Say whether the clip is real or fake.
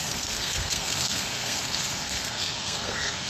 fake